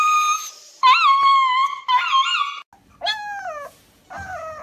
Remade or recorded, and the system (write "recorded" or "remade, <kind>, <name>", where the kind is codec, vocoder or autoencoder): recorded